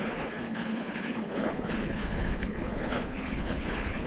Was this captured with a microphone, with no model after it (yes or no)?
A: no